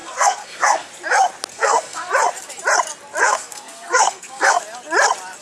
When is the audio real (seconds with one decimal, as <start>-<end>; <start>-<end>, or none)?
0.9-1.5; 2.1-3.2; 4.6-5.4